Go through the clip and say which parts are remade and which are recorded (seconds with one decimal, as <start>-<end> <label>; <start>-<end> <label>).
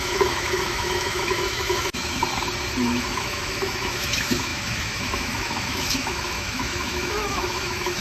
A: 0.0-2.2 remade; 2.2-2.8 recorded; 2.8-8.0 remade